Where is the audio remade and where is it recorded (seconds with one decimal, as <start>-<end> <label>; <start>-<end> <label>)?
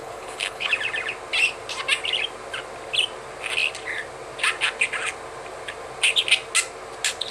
0.0-0.7 remade; 0.7-7.3 recorded